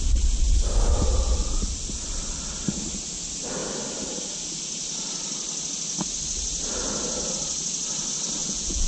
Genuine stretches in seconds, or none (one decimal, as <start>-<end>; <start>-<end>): 0.0-8.4